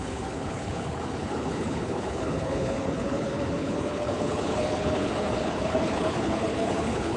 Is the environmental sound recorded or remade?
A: remade